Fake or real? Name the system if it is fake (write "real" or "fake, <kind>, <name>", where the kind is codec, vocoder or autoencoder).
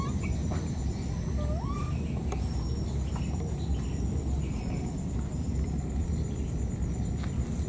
real